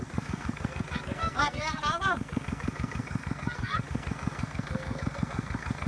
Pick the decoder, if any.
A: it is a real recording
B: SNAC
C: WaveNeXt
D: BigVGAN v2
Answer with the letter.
B